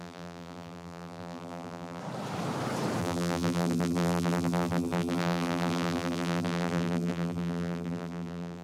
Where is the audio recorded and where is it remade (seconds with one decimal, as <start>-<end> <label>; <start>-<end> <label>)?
0.0-2.0 remade; 2.0-3.0 recorded; 3.0-8.6 remade